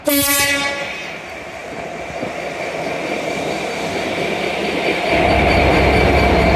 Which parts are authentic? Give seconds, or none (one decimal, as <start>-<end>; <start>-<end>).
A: 0.0-6.6